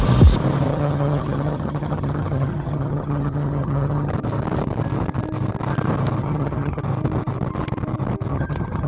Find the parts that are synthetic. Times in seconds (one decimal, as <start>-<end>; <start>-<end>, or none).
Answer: 0.7-4.1; 6.2-6.8; 8.3-8.9